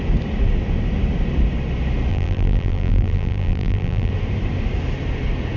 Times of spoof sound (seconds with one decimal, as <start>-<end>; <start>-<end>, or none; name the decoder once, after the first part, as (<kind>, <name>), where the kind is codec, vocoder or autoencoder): 2.1-4.1 (vocoder, BigVGAN v2)